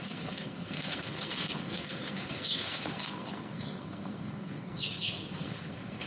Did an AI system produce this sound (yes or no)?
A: yes